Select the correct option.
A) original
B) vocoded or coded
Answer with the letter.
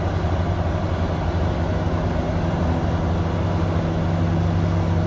A